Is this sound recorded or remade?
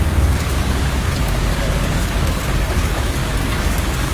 remade